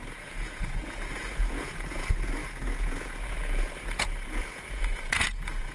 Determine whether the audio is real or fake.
fake